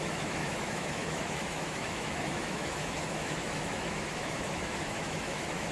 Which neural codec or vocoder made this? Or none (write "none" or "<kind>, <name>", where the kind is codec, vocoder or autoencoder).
autoencoder, DAC-VAE